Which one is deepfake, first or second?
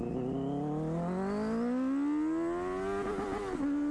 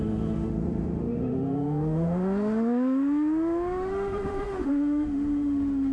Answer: second